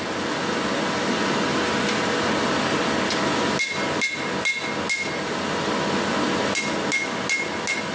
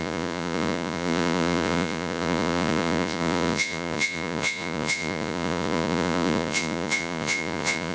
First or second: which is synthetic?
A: second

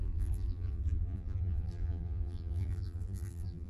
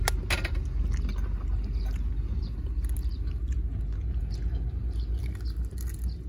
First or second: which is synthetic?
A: first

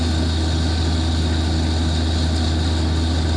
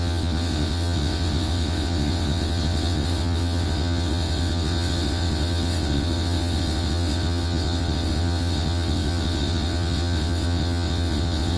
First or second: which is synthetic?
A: second